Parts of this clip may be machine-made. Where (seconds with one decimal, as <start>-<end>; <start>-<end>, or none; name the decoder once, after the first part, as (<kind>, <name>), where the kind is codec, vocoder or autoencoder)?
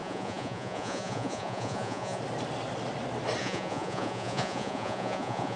0.0-2.2 (vocoder, Vocos); 3.4-5.6